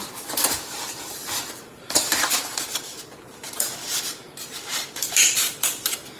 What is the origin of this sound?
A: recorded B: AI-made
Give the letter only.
B